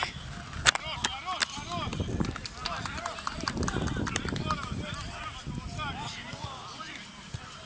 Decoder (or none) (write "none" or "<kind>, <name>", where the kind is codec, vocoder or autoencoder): none